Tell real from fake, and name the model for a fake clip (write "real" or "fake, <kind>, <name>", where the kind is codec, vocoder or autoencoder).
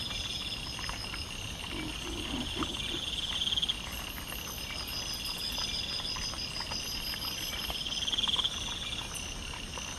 real